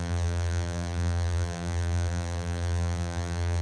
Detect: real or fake fake